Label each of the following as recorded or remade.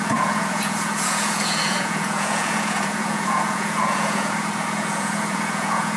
remade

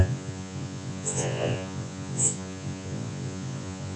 remade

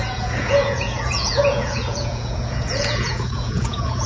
remade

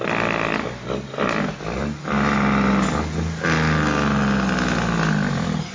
recorded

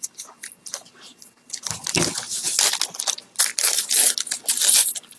recorded